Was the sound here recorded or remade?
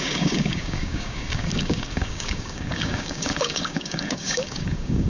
remade